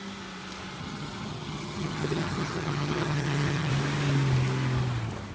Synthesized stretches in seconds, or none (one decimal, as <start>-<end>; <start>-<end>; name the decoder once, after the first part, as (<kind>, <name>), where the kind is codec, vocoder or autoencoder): 0.8-3.7 (vocoder, HiFi-GAN)